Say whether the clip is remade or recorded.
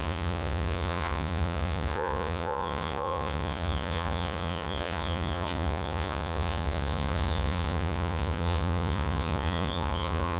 remade